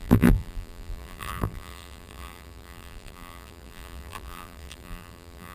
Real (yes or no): no